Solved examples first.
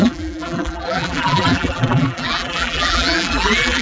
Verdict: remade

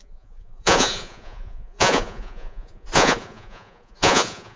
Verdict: remade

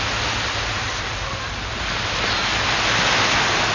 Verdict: recorded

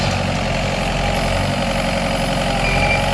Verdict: recorded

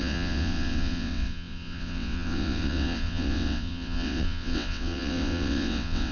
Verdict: remade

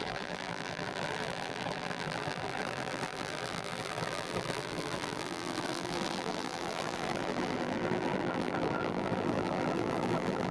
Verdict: remade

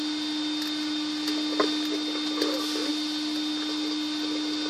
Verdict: recorded